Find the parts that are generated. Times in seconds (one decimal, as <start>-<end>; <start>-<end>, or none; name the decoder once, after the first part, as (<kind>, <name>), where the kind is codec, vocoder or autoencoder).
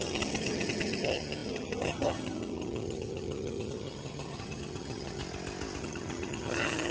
0.0-5.2 (vocoder, HiFi-GAN); 5.8-6.9